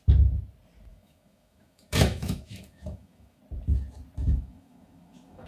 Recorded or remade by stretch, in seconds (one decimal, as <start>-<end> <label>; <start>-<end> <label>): 0.0-0.9 recorded; 0.9-3.4 remade; 3.4-4.2 recorded; 4.2-5.5 remade